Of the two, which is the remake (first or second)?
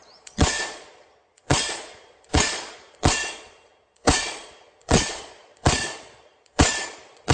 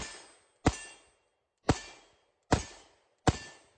first